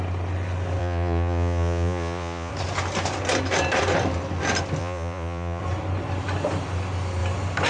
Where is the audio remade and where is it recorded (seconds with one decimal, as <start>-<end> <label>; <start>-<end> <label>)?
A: 0.0-0.8 recorded; 0.8-2.5 remade; 2.5-4.8 recorded; 4.8-5.6 remade; 5.6-7.7 recorded